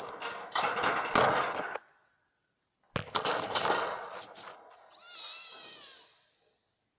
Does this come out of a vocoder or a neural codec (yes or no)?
no